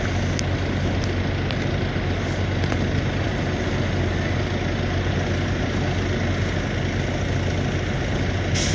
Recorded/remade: recorded